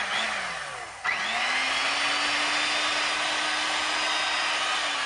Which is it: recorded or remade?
recorded